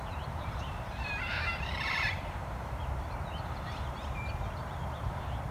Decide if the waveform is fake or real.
fake